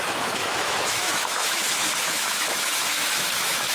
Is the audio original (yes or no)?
no